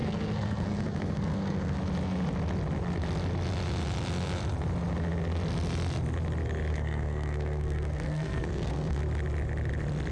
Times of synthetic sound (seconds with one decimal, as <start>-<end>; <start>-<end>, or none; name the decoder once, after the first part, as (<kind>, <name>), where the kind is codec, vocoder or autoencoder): 0.0-1.8 (codec, SNAC); 6.7-9.0